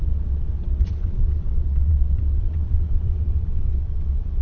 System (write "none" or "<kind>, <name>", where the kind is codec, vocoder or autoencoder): vocoder, WaveNeXt